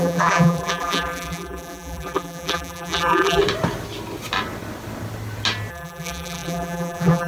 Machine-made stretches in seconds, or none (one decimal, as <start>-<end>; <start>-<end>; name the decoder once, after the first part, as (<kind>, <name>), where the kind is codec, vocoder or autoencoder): 0.0-3.4 (vocoder, BigVGAN v2); 5.7-7.3